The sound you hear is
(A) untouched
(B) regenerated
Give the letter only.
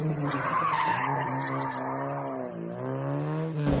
A